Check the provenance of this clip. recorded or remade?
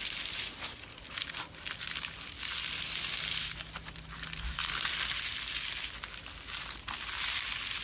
recorded